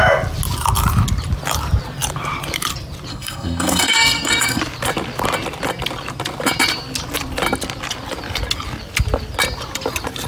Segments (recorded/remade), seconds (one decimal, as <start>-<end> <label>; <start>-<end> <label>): 0.0-3.1 recorded; 3.1-4.6 remade; 4.6-10.3 recorded